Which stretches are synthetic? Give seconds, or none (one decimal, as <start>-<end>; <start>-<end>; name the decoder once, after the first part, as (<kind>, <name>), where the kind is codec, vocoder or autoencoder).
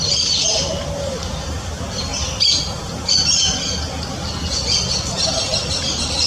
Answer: 0.0-2.1 (vocoder, BigVGAN v2)